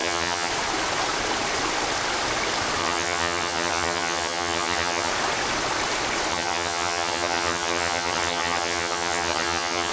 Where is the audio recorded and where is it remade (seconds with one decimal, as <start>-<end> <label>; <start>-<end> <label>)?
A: 0.0-0.5 remade; 0.5-2.8 recorded; 2.8-5.1 remade; 5.1-6.3 recorded; 6.3-9.9 remade